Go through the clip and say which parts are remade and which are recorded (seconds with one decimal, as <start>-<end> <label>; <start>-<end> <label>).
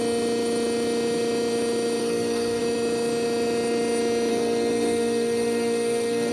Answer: 0.0-2.0 recorded; 2.0-2.6 remade; 2.6-4.3 recorded; 4.3-6.3 remade